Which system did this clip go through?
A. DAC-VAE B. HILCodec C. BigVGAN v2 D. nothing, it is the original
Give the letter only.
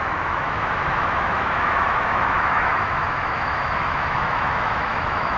A